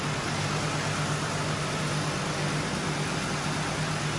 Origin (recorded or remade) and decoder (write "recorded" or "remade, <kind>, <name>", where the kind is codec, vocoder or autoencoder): recorded